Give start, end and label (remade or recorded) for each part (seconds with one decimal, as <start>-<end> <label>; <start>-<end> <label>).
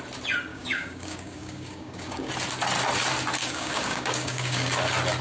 0.0-0.5 recorded; 0.5-2.3 remade; 2.3-3.4 recorded; 3.4-4.7 remade; 4.7-5.2 recorded